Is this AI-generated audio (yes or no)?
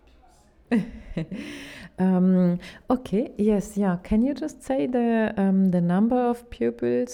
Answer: no